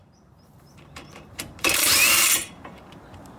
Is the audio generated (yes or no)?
yes